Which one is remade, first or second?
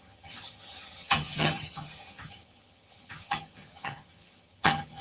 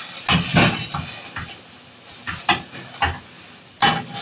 first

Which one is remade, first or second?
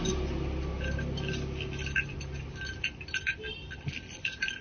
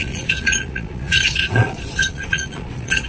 second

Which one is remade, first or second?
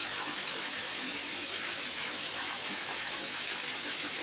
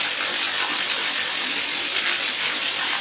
first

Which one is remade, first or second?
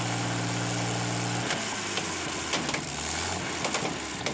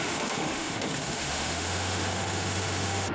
second